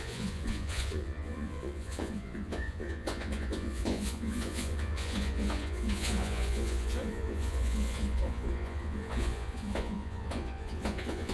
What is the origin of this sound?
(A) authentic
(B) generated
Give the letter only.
B